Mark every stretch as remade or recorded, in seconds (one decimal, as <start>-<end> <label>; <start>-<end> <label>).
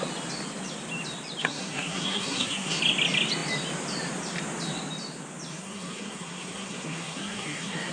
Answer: 0.0-1.4 recorded; 1.4-2.8 remade; 2.8-5.5 recorded; 5.5-7.9 remade